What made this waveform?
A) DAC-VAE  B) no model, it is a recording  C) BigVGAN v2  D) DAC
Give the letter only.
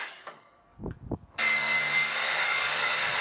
D